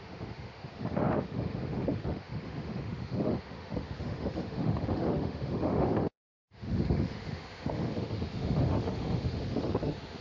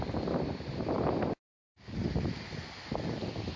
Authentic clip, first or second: second